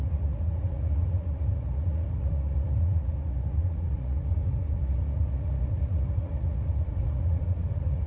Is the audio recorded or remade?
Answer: remade